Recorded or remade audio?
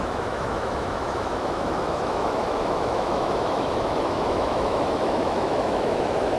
remade